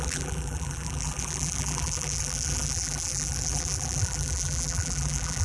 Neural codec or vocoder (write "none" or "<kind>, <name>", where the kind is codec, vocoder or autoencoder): vocoder, BigVGAN v2